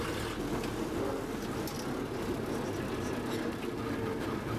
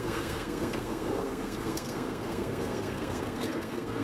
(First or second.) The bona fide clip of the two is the first